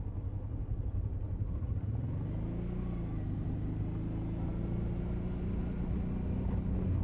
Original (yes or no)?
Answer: yes